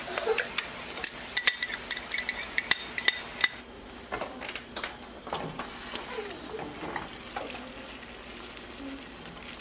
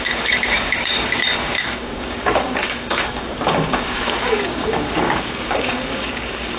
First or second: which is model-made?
second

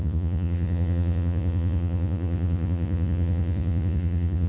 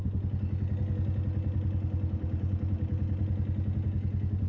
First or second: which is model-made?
first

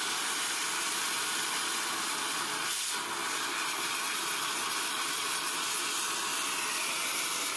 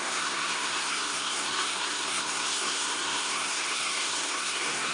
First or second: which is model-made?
second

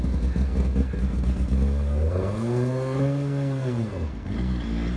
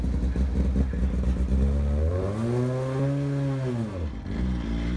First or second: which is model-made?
first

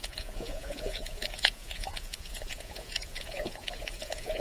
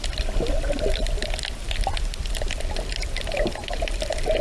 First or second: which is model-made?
first